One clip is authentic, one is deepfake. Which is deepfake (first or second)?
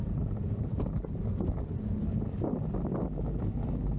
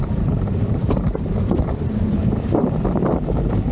second